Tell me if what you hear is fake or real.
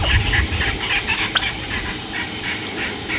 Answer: real